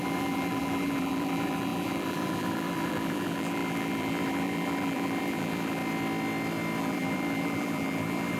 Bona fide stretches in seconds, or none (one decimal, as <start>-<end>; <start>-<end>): 5.8-6.8